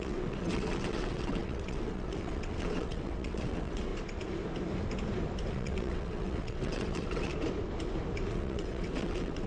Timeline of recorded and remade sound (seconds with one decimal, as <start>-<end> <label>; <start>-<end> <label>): 0.0-3.9 remade; 3.9-5.5 recorded; 5.5-7.3 remade; 7.3-8.3 recorded; 8.3-9.5 remade